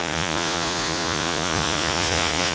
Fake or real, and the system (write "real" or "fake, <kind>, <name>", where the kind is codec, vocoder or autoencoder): fake, vocoder, Vocos